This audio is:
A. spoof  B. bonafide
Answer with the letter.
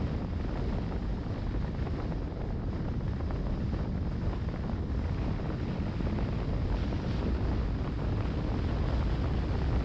B